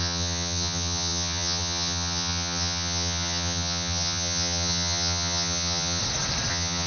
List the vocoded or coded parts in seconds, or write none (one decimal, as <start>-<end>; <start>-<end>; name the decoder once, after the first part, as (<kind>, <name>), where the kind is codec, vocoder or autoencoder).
0.0-6.0 (vocoder, HiFi-GAN); 6.5-6.9